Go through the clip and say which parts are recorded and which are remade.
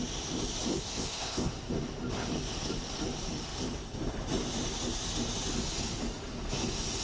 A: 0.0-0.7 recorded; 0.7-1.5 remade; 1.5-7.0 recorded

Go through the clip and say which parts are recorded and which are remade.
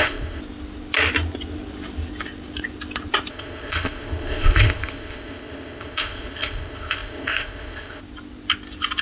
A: 0.0-0.4 remade; 0.4-3.3 recorded; 3.3-8.0 remade; 8.0-9.0 recorded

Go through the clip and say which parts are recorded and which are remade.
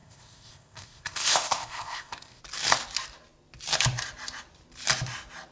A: 0.0-2.4 remade; 2.4-5.5 recorded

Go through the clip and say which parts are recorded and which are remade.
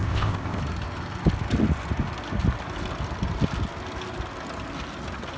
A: 0.0-0.6 remade; 0.6-5.4 recorded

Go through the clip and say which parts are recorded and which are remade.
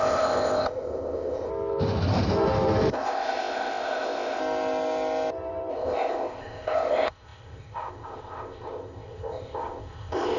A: 0.0-1.5 remade; 1.5-2.9 recorded; 2.9-4.4 remade; 4.4-5.7 recorded; 5.7-10.4 remade